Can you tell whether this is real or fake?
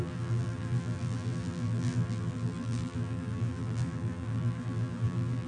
fake